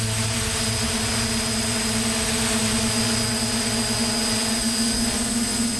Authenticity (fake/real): real